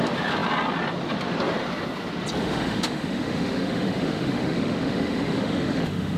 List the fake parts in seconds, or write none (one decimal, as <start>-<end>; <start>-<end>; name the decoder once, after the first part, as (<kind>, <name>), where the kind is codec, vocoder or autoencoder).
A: 2.4-6.2 (autoencoder, DAC-VAE)